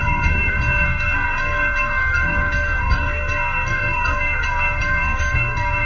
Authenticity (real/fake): fake